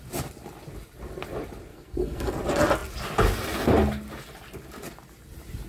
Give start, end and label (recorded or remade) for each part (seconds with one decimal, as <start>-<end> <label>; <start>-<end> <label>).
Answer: 0.0-1.7 recorded; 1.7-2.3 remade; 2.3-5.7 recorded